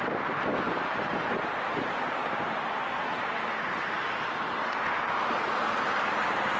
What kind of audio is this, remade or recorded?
recorded